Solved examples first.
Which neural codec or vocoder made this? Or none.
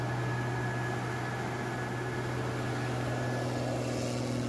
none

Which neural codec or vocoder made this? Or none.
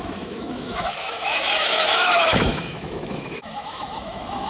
autoencoder, DAC-VAE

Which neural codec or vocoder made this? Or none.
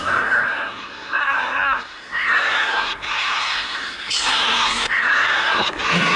codec, SNAC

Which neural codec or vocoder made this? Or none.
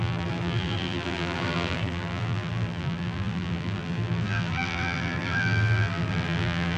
vocoder, BigVGAN v2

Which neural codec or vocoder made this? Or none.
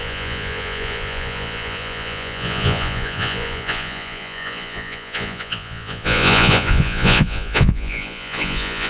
vocoder, Vocos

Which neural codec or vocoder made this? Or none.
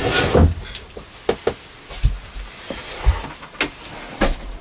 none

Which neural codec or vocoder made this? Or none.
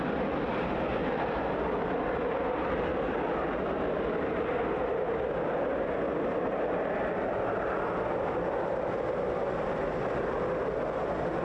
none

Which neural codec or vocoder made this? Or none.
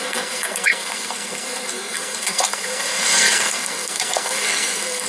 codec, SNAC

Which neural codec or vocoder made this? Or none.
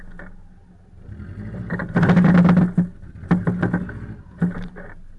none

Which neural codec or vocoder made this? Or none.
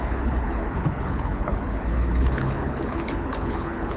codec, HILCodec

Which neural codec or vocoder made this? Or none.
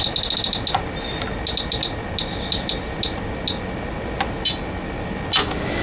none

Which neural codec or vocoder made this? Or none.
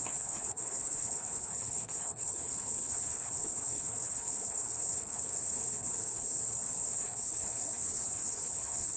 codec, HILCodec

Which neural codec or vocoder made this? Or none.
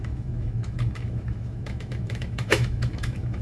autoencoder, DAC-VAE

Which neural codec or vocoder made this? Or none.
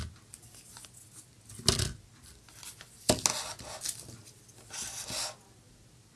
none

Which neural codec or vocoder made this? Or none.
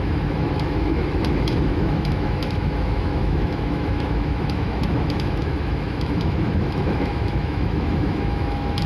autoencoder, DAC-VAE